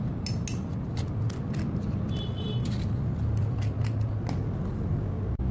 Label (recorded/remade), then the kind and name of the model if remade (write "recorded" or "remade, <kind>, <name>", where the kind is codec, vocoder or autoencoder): recorded